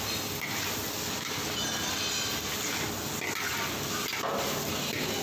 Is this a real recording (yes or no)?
yes